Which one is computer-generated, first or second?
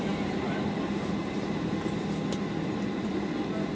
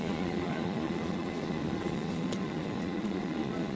second